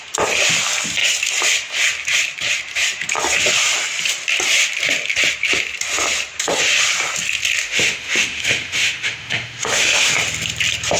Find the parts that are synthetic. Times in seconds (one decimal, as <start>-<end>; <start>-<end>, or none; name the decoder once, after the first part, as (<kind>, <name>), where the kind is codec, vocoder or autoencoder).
7.6-10.1 (autoencoder, DAC-VAE)